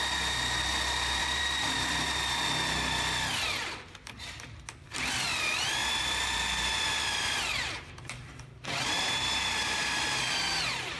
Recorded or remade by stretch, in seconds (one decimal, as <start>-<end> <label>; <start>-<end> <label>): 0.0-1.2 recorded; 1.2-2.2 remade; 2.2-5.8 recorded; 5.8-10.1 remade; 10.1-11.0 recorded